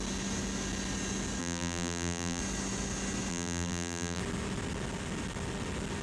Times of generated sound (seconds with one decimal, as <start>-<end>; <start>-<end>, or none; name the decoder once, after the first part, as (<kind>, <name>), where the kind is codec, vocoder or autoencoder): 1.4-2.4 (vocoder, BigVGAN v2); 3.3-4.2